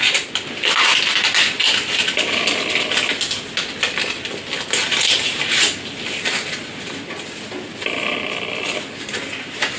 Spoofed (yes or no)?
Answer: no